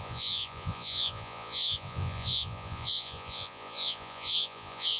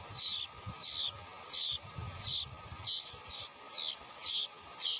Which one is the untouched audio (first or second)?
second